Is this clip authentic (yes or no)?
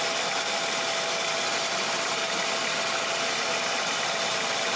yes